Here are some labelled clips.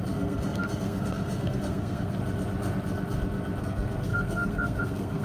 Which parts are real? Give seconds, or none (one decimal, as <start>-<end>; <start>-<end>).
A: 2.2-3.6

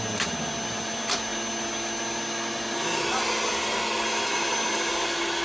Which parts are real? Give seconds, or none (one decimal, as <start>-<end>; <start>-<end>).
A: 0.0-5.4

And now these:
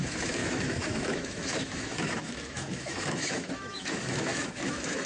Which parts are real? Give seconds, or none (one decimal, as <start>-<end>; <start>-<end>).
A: none

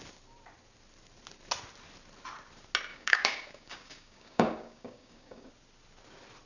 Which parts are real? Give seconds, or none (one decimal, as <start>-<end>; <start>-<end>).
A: 0.0-2.9; 5.5-6.5

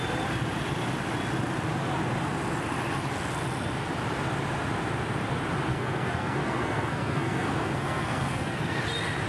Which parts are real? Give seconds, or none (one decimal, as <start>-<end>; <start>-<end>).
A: 0.0-5.7; 8.8-9.3